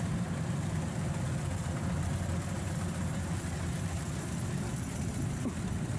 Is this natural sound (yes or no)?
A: no